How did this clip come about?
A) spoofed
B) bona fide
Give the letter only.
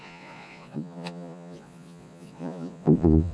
A